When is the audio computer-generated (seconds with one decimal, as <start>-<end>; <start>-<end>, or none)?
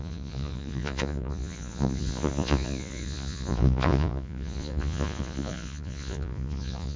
0.0-7.0